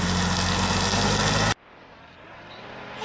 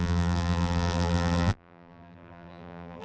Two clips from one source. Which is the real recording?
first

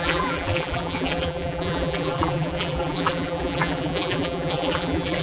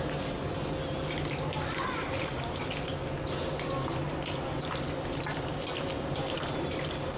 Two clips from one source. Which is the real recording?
second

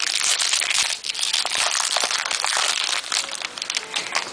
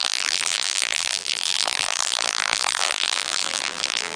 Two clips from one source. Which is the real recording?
first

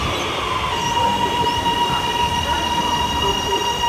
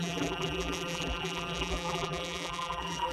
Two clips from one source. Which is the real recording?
first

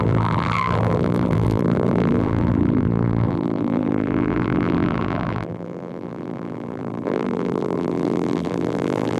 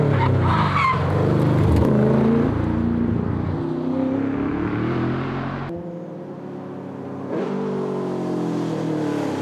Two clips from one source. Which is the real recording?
second